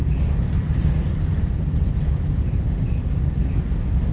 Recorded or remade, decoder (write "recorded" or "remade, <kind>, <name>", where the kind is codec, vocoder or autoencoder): recorded